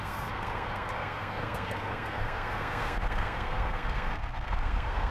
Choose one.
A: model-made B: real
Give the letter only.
A